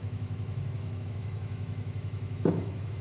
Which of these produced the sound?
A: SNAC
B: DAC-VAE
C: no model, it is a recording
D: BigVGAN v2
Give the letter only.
B